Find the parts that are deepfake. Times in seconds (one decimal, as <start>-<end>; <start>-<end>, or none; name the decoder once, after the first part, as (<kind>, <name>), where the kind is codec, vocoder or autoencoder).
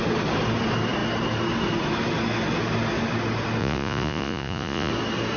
3.6-4.9 (vocoder, Vocos)